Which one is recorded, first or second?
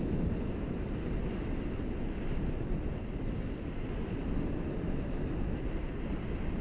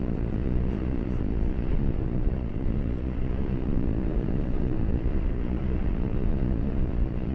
first